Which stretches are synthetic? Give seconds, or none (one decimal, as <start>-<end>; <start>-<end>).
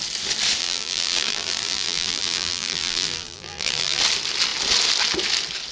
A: 0.6-4.0